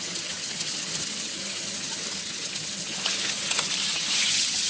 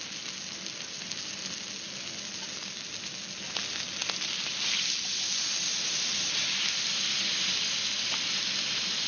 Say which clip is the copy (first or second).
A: first